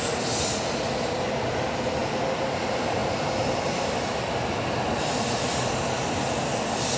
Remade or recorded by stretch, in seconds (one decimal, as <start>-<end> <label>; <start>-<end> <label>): 0.0-7.0 recorded